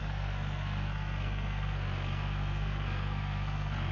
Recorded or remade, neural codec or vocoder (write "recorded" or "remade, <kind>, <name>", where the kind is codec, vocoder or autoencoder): remade, codec, SNAC